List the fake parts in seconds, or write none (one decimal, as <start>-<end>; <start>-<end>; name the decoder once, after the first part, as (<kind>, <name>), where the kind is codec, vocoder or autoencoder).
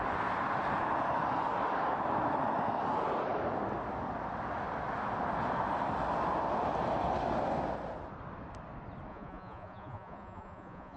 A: 9.1-11.0 (vocoder, Vocos)